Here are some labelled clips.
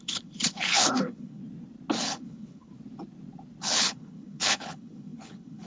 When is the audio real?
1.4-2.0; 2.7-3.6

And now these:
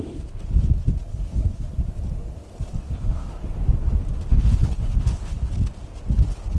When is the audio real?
0.0-1.1; 1.7-2.7; 3.3-4.3; 5.5-6.6

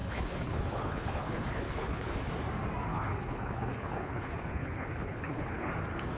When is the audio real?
2.3-2.9; 5.7-6.2

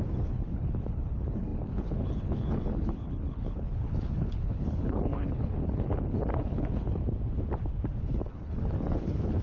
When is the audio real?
7.0-8.0